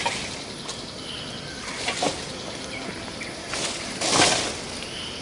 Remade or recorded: recorded